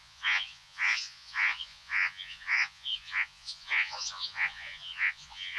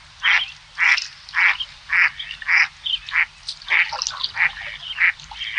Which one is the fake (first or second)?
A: first